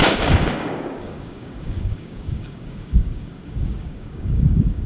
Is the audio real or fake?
fake